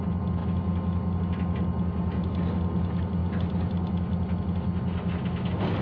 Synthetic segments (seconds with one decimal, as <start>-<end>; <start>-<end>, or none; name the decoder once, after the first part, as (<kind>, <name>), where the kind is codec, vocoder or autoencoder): none